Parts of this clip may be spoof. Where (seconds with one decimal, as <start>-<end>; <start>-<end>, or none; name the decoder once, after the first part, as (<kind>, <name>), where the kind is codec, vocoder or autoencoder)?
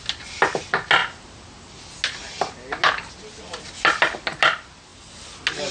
none